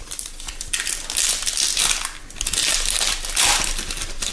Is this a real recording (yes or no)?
no